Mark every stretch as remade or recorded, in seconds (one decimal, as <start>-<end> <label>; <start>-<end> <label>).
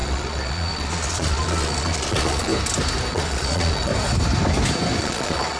0.0-2.5 remade; 2.5-3.1 recorded; 3.1-3.9 remade; 3.9-5.0 recorded; 5.0-5.6 remade